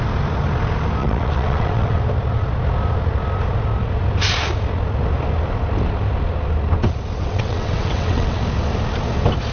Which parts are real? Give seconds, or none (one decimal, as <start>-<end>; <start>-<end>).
0.0-1.0; 2.0-7.2; 8.4-9.5